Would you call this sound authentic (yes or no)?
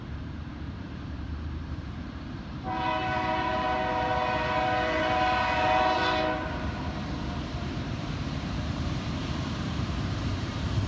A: no